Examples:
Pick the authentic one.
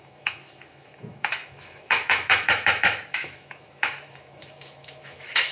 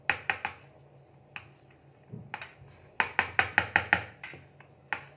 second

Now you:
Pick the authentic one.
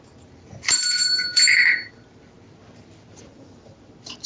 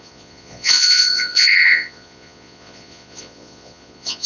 first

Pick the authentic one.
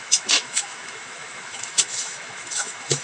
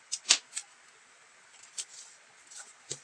second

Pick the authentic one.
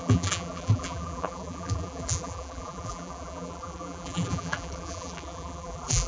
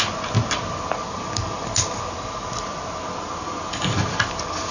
second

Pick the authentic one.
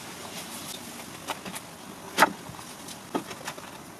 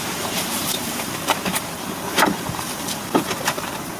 first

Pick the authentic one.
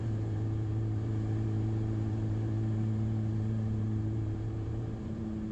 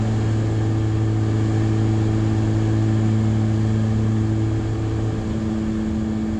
second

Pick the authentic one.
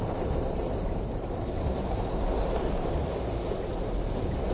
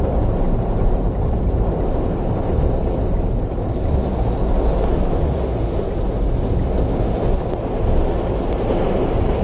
second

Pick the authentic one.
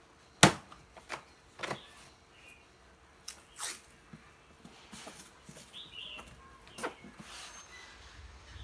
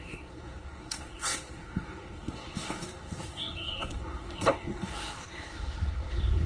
first